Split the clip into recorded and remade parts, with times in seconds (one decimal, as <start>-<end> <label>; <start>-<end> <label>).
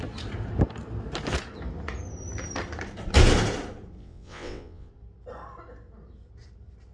0.0-4.0 recorded; 4.0-4.9 remade; 4.9-6.9 recorded